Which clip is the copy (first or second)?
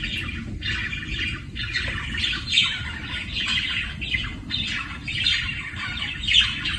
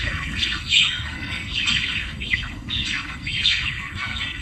second